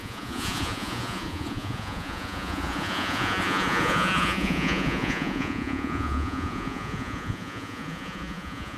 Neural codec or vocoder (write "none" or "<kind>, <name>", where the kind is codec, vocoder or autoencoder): vocoder, Vocos